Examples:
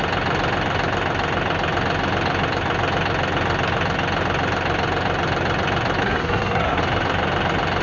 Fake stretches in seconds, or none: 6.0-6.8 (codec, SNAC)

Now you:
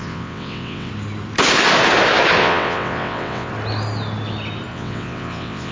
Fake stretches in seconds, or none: 0.0-0.9 (vocoder, WaveNeXt); 2.4-3.5; 4.7-5.7